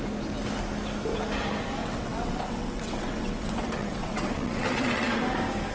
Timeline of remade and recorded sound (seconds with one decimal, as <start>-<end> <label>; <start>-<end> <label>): 0.0-1.8 recorded; 1.8-5.2 remade; 5.2-5.7 recorded